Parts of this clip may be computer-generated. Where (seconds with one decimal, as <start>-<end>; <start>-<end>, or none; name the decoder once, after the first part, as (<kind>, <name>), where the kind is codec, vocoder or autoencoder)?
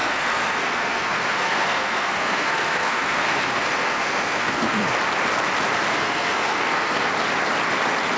0.0-4.9 (codec, SNAC); 5.9-7.1